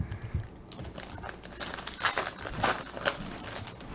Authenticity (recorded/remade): recorded